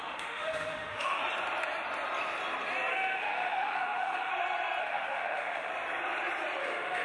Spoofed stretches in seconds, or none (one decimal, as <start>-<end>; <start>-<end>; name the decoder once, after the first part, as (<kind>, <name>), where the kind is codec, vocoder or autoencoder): 0.0-1.2 (autoencoder, DAC-VAE); 2.9-4.3; 4.8-5.7; 6.6-7.0